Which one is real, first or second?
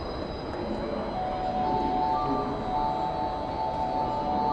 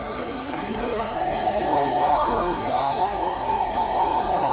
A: first